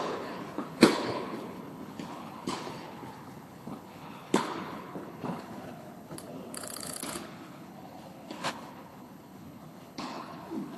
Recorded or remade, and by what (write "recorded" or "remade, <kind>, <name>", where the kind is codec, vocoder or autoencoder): remade, codec, HILCodec